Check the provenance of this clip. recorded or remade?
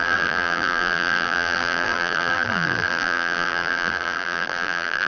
remade